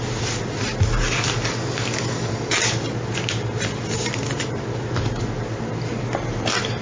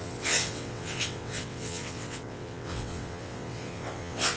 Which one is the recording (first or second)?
first